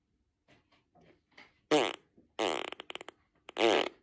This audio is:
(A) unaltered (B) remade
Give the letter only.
A